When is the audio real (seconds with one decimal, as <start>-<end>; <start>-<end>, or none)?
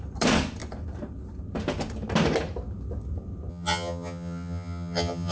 0.0-3.5